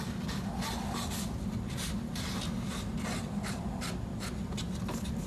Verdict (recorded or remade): recorded